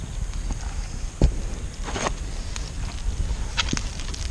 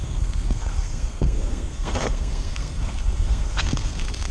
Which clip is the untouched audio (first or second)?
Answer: first